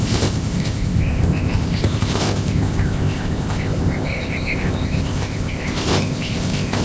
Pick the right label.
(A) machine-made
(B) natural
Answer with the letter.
A